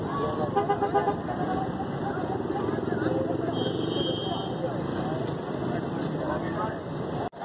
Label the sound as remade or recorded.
recorded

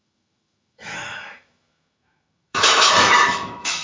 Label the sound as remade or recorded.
remade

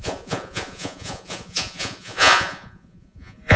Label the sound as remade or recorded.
remade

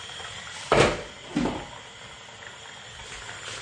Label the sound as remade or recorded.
recorded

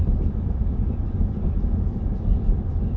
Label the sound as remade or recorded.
remade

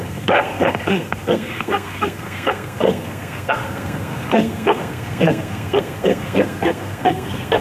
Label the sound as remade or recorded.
remade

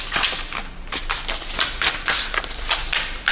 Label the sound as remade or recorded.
recorded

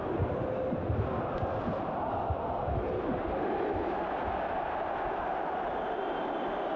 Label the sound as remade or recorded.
recorded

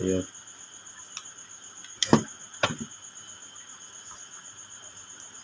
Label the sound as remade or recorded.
recorded